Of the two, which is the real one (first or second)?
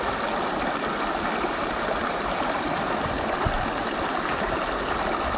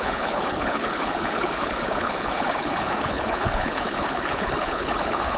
first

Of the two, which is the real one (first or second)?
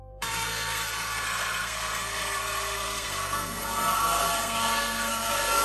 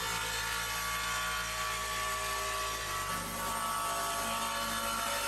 second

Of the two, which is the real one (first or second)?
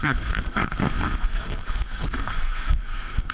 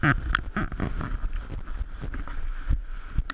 second